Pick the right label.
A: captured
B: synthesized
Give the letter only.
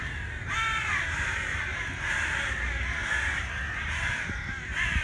A